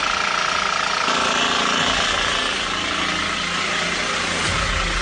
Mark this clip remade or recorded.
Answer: recorded